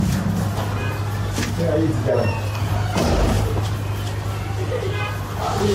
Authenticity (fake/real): real